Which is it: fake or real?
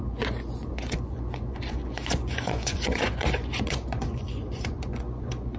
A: fake